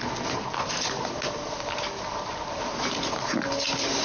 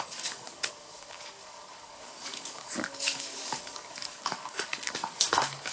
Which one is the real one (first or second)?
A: first